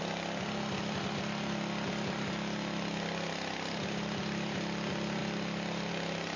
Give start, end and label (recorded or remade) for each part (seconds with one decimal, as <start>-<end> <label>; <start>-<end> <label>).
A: 0.0-6.4 recorded